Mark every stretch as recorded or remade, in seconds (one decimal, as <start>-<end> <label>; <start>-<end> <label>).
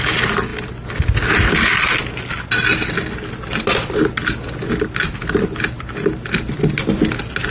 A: 0.0-7.5 recorded